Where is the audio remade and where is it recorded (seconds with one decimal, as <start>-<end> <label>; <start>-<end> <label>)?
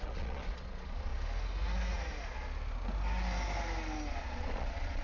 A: 0.0-1.1 remade; 1.1-4.1 recorded; 4.1-5.0 remade